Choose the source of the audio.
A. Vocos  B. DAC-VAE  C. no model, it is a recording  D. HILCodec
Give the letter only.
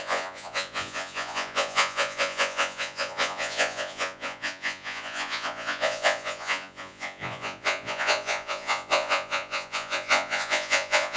A